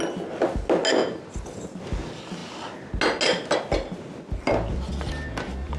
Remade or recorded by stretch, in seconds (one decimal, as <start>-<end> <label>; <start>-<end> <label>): 0.0-5.8 recorded